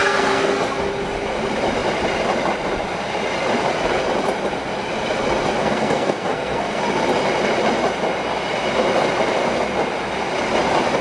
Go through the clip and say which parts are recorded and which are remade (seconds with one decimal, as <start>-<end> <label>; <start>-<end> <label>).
0.0-0.5 remade; 0.5-5.6 recorded; 5.6-6.8 remade; 6.8-11.0 recorded